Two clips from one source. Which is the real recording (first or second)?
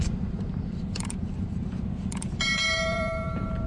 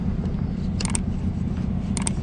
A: second